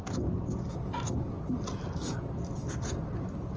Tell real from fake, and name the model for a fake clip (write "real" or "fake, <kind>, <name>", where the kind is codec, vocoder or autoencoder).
real